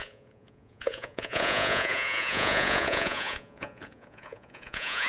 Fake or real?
fake